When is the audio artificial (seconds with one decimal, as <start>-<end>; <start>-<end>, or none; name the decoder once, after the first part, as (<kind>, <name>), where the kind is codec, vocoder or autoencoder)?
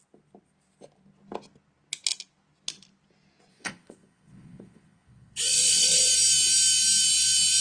3.5-6.0 (vocoder, Vocos)